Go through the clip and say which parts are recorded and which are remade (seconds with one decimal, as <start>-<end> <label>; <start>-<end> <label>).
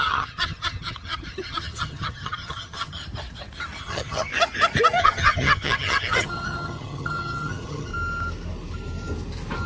0.0-3.0 remade; 3.0-3.8 recorded; 3.8-4.3 remade; 4.3-5.0 recorded; 5.0-7.9 remade; 7.9-9.7 recorded